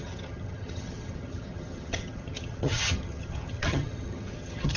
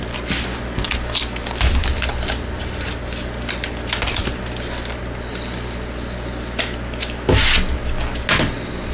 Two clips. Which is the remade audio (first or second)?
first